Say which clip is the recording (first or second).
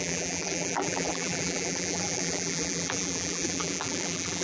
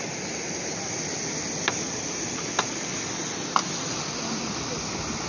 second